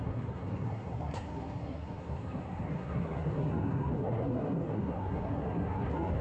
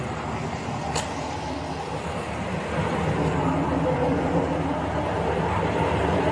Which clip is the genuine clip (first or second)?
second